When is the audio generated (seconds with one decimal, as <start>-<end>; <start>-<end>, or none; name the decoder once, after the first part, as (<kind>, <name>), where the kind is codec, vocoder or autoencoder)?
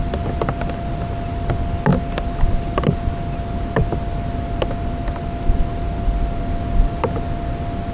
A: none